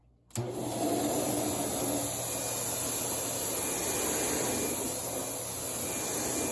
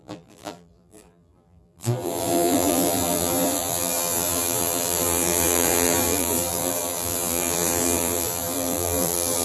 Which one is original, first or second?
first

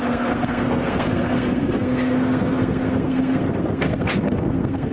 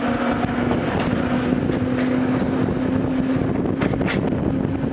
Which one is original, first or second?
second